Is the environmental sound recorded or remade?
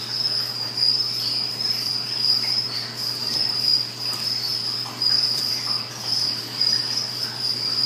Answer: remade